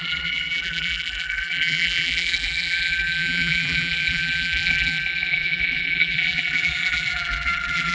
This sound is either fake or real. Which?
fake